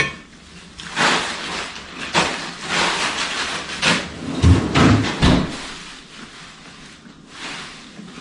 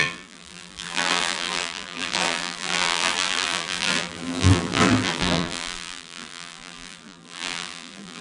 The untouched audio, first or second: first